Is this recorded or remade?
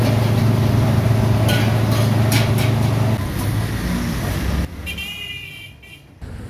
recorded